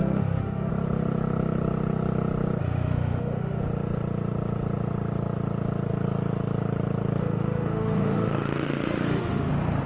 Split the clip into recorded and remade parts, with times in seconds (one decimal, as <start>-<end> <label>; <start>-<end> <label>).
0.0-0.7 remade; 0.7-2.6 recorded; 2.6-3.6 remade; 3.6-7.2 recorded; 7.2-9.5 remade; 9.5-9.9 recorded

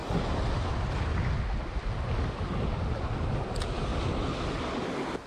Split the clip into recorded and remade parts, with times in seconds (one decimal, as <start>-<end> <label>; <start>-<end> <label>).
0.0-5.3 recorded